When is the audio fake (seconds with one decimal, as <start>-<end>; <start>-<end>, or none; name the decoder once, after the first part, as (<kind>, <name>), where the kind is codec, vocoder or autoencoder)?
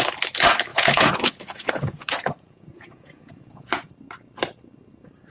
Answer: 0.7-3.9 (vocoder, Vocos)